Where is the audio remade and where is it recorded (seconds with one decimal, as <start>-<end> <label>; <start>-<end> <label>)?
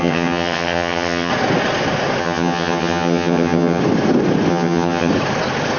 0.0-1.3 remade; 1.3-2.2 recorded; 2.2-3.8 remade; 3.8-4.5 recorded; 4.5-5.1 remade; 5.1-5.8 recorded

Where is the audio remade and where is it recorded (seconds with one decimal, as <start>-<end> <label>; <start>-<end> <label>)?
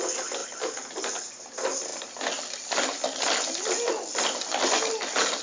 0.0-5.4 recorded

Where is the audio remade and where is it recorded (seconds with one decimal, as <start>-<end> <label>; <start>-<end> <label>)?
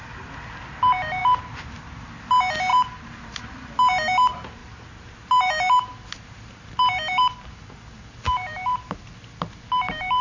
0.0-1.2 recorded; 1.2-2.0 remade; 2.0-2.7 recorded; 2.7-3.2 remade; 3.2-4.6 recorded; 4.6-9.1 remade; 9.1-10.2 recorded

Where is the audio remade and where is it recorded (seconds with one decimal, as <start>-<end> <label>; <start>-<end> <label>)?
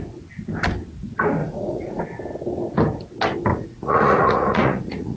0.0-1.4 recorded; 1.4-2.0 remade; 2.0-3.5 recorded; 3.5-5.2 remade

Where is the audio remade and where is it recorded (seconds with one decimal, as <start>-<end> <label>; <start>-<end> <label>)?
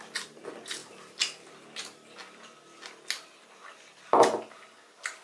0.0-5.2 recorded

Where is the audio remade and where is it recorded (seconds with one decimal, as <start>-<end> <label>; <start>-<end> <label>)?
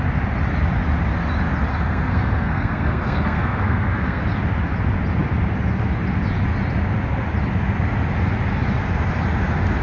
0.0-1.7 recorded; 1.7-4.2 remade; 4.2-9.8 recorded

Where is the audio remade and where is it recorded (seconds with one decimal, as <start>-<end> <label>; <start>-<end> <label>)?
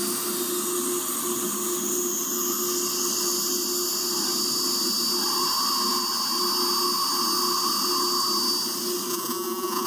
0.0-9.1 recorded; 9.1-9.9 remade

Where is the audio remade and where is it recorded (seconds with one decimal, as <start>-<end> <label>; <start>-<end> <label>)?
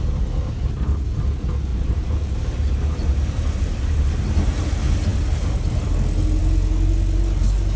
0.0-1.7 recorded; 1.7-4.3 remade; 4.3-7.8 recorded